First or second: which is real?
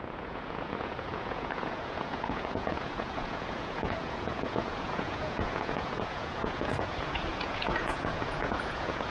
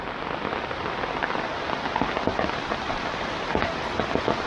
second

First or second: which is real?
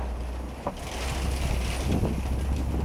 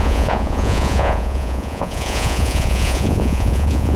first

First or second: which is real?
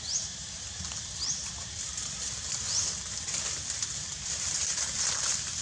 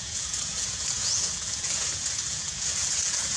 first